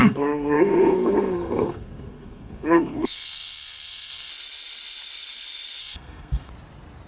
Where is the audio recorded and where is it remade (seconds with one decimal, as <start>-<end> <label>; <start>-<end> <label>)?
0.0-4.3 remade; 4.3-5.8 recorded; 5.8-6.5 remade; 6.5-7.1 recorded